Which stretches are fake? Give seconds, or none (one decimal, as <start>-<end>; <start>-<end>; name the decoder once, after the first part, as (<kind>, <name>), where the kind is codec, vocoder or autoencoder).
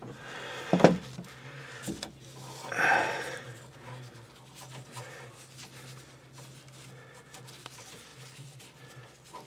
none